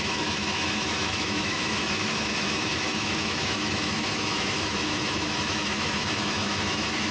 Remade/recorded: remade